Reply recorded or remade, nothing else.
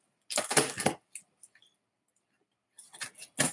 recorded